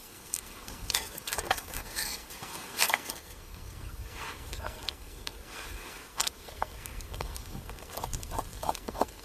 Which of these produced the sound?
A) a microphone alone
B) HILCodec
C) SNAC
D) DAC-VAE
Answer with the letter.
C